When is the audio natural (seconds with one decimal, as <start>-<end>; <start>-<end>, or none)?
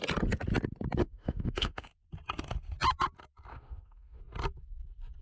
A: 0.0-1.0; 1.9-3.5; 4.2-5.2